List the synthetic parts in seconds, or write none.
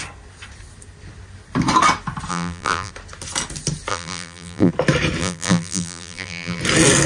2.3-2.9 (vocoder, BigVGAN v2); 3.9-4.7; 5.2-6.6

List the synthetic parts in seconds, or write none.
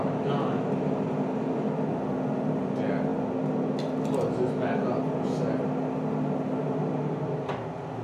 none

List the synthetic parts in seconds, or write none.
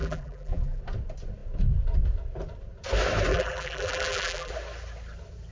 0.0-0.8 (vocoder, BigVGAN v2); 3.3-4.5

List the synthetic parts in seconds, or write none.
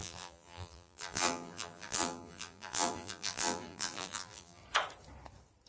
0.0-4.6 (vocoder, BigVGAN v2)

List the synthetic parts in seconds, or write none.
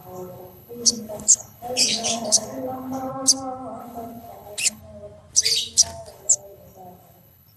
0.0-3.1 (codec, HILCodec); 3.8-4.8; 6.1-7.6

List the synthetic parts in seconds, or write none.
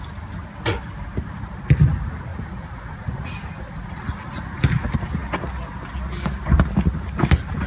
2.3-4.0 (vocoder, Vocos)